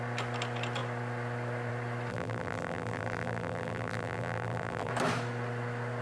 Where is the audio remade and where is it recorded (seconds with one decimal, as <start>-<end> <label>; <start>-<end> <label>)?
0.0-2.1 recorded; 2.1-4.9 remade; 4.9-6.0 recorded